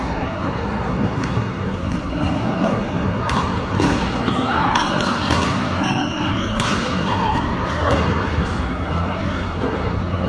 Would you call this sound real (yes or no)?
no